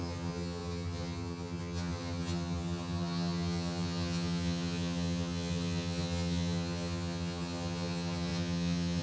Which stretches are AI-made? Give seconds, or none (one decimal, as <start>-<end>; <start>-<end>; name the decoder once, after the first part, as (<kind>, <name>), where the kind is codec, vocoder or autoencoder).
0.0-9.0 (vocoder, HiFi-GAN)

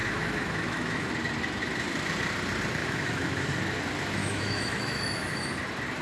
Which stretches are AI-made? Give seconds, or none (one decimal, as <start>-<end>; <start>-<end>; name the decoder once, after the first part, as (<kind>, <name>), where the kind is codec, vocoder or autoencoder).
0.0-1.1 (autoencoder, DAC-VAE); 2.8-3.5; 4.2-5.5

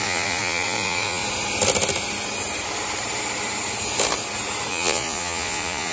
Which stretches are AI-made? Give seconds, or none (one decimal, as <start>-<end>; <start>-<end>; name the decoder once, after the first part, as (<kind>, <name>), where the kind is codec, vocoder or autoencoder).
0.0-1.2 (vocoder, Vocos); 4.7-5.9

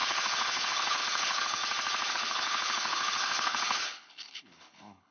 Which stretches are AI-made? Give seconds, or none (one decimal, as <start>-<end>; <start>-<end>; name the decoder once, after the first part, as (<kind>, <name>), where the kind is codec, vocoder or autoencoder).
0.0-1.6 (codec, HILCodec); 2.1-5.1

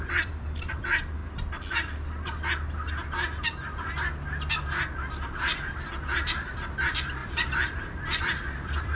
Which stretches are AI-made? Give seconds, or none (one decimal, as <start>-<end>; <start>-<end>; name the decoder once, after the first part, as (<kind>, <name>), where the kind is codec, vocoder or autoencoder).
0.0-1.2 (vocoder, BigVGAN v2); 5.1-9.0

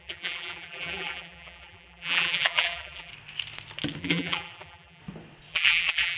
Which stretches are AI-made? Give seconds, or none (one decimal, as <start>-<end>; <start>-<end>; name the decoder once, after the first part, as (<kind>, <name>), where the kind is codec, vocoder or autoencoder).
0.0-3.1 (vocoder, BigVGAN v2); 4.0-5.0; 5.5-6.2

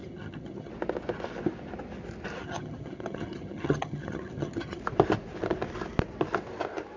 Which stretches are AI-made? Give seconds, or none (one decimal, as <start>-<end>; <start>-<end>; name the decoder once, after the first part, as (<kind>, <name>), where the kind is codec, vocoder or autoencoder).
0.0-0.7 (vocoder, HiFi-GAN); 2.4-4.8

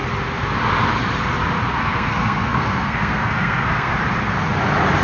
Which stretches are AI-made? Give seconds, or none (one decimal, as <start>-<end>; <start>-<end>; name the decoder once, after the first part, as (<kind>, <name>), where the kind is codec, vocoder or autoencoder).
1.7-3.9 (codec, SNAC)